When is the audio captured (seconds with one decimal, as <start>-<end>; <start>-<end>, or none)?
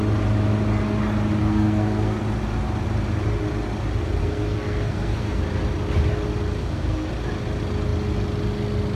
0.0-1.4; 2.2-4.2; 5.4-6.6; 7.1-9.0